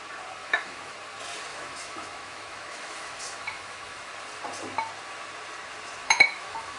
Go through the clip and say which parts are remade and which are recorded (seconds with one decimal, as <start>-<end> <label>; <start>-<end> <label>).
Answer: 0.0-0.4 recorded; 0.4-0.9 remade; 0.9-1.5 recorded; 1.5-4.1 remade; 4.1-6.0 recorded; 6.0-6.8 remade